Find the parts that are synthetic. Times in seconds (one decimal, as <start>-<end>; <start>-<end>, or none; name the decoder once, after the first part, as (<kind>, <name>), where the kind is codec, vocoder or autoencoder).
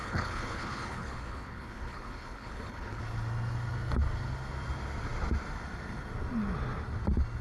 0.0-3.0 (codec, HILCodec)